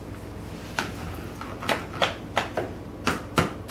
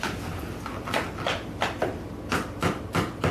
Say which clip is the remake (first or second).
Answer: second